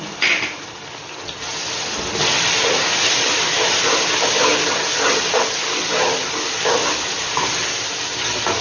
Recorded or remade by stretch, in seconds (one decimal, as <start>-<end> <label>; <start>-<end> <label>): 0.0-8.6 recorded

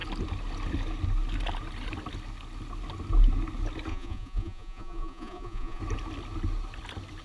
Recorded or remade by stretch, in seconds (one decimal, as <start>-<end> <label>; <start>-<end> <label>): 0.0-3.9 recorded; 3.9-5.8 remade; 5.8-7.2 recorded

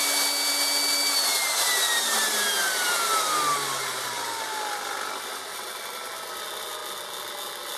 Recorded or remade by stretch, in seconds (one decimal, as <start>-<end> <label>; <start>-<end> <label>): 0.0-7.8 recorded

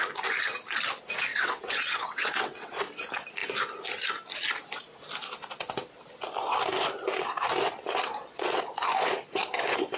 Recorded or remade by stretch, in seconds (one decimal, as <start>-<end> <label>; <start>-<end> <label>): 0.0-1.3 recorded; 1.3-2.7 remade; 2.7-8.0 recorded; 8.0-8.6 remade; 8.6-10.0 recorded